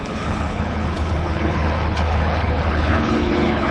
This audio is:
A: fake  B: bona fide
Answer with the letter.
A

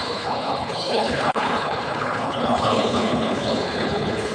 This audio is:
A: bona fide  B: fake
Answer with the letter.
B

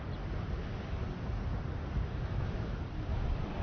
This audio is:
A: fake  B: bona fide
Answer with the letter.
B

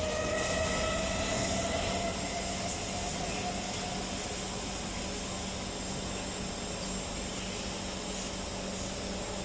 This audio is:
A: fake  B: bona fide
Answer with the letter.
B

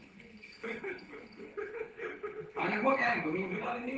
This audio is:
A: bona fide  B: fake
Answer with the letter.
B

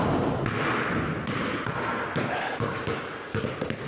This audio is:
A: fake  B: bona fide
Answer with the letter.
B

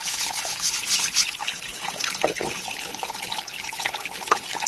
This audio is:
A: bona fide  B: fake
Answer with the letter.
B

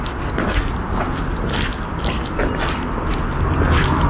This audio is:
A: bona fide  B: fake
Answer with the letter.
A